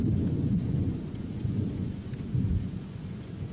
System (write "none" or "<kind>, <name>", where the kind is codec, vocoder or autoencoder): vocoder, Vocos